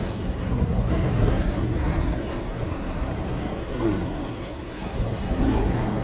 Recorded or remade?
remade